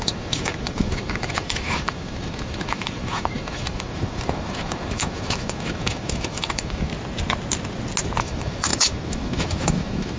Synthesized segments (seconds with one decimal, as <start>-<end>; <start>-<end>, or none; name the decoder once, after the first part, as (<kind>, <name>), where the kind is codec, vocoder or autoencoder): 0.0-6.9 (autoencoder, DAC-VAE); 8.2-10.2